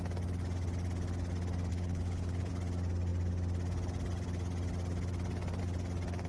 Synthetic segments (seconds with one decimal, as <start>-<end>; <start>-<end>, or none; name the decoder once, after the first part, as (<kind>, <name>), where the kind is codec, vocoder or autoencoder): 1.7-2.5 (codec, HILCodec)

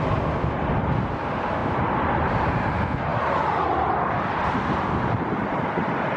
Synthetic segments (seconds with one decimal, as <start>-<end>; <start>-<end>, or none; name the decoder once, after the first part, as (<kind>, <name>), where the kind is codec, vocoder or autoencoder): none